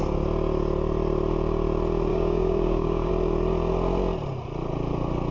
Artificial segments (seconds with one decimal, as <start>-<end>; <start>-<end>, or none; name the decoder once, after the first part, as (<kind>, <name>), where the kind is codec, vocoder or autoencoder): 2.1-3.1 (codec, DAC)

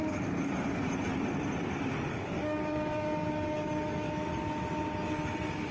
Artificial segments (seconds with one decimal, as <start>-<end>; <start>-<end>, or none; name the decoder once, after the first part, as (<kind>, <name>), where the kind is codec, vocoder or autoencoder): 2.1-4.1 (codec, DAC)

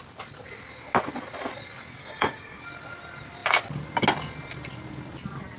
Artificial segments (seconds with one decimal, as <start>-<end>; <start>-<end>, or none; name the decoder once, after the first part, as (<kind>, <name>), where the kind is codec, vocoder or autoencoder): 2.0-2.6 (codec, DAC)

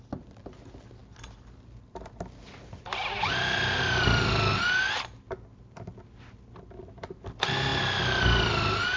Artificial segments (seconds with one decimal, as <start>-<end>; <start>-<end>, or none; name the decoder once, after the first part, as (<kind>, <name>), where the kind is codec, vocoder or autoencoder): none

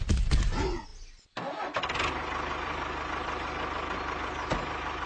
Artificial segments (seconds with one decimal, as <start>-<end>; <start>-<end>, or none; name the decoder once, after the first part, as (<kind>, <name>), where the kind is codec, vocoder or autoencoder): none

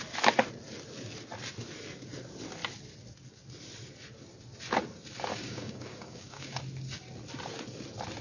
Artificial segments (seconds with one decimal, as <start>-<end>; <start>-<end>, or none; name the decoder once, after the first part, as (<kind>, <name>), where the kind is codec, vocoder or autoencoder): 5.3-6.6 (codec, DAC)